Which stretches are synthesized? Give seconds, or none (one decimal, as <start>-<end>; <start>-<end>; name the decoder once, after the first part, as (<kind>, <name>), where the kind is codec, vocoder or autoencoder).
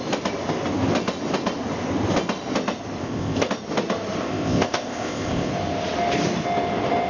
3.0-3.5 (codec, ZipCodec); 4.2-5.5